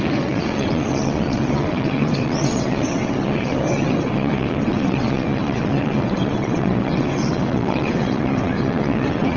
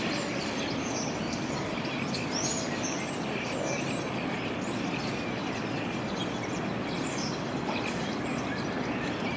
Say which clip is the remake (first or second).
first